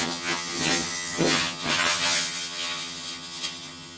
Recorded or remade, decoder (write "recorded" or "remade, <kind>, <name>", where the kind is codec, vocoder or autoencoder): remade, vocoder, HiFi-GAN